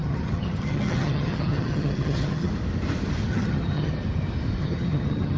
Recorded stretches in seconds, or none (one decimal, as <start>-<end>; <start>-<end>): 2.5-3.3; 3.9-4.6